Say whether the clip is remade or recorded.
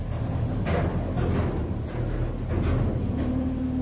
recorded